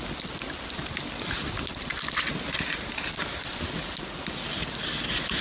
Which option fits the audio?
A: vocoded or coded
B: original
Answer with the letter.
B